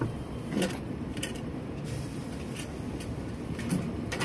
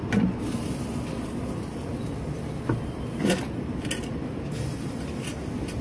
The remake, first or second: first